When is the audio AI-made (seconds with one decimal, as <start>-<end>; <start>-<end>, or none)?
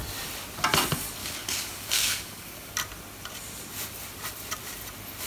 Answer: 1.2-2.7